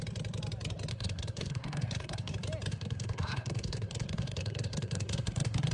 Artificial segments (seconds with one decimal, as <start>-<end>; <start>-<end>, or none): 0.9-2.3; 2.7-5.7